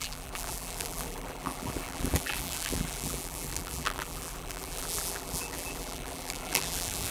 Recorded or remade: remade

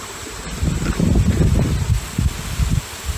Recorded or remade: recorded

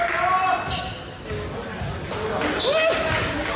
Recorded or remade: recorded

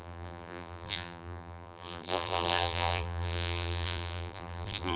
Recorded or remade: remade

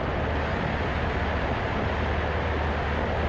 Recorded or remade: recorded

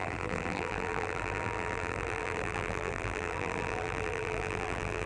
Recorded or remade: remade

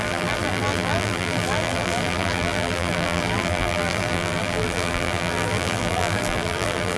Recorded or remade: remade